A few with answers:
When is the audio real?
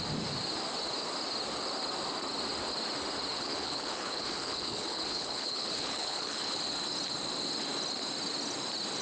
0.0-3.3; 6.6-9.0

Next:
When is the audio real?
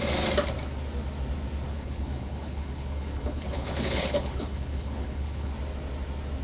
0.0-1.7; 5.5-6.4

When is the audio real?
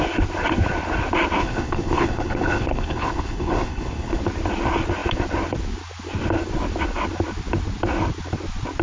0.0-1.4; 4.2-8.8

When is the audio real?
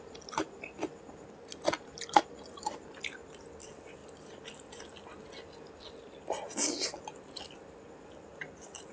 0.0-8.9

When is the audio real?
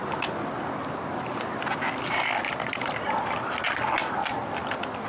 0.0-5.1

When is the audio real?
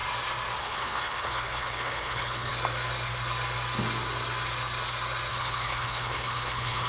0.0-0.6; 2.5-5.3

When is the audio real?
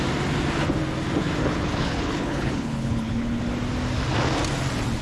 0.0-1.4; 3.4-5.0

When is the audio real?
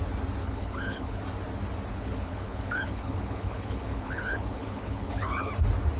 0.0-0.4; 1.2-1.9; 5.5-6.0